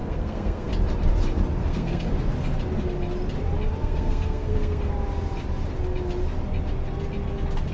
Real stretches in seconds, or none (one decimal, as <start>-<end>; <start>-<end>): 0.7-1.6; 2.1-3.8; 4.9-7.7